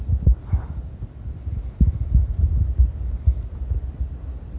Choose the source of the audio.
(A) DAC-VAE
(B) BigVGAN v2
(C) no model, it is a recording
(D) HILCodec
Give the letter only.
C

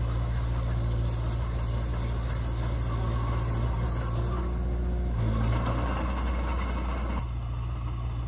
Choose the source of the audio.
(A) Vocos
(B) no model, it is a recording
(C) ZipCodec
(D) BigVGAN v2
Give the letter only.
B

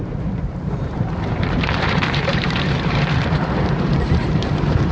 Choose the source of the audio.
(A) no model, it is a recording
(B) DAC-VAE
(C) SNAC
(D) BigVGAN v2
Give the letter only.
D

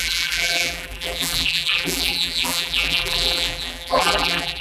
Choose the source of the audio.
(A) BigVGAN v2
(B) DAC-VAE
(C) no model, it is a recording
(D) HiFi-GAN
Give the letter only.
A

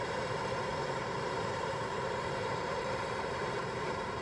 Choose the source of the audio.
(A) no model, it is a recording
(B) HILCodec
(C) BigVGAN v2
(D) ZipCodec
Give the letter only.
C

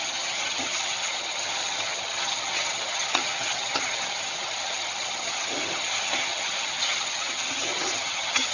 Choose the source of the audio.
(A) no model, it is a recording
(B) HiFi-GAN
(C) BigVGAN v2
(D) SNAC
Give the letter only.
B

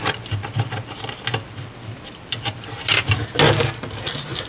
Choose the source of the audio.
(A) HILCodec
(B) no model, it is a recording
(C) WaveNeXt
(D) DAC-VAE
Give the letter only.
B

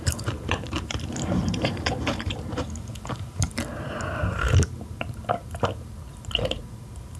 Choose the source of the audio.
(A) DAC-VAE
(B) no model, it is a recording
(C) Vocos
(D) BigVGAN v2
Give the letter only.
D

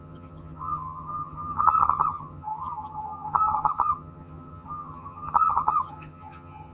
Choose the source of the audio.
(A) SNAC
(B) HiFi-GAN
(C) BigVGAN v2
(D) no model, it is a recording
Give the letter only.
B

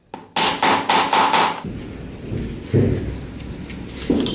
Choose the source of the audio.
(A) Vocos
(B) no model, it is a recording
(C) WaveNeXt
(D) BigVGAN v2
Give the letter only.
B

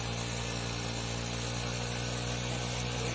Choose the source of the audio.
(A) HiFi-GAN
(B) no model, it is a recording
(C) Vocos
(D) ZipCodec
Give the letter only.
B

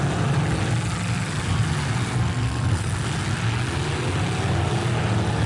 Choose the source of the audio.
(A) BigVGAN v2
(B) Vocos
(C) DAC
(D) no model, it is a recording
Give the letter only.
D